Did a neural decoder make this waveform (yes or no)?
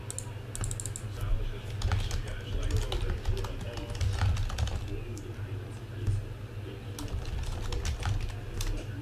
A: no